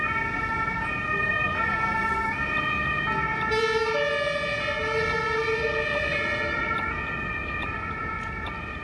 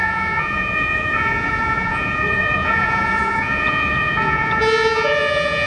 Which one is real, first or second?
first